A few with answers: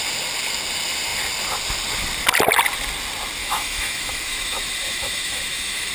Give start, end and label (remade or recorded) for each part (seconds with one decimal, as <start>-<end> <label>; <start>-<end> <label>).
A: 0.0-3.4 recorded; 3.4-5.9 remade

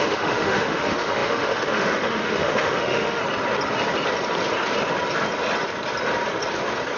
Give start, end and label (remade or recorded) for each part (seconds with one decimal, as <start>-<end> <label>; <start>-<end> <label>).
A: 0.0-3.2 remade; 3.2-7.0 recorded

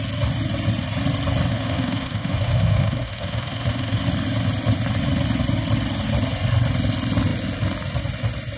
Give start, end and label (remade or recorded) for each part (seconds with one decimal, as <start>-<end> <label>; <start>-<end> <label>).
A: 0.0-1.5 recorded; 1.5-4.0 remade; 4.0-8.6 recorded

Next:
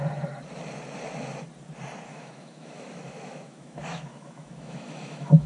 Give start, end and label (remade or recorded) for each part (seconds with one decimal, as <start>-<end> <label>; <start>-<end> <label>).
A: 0.0-2.1 recorded; 2.1-5.5 remade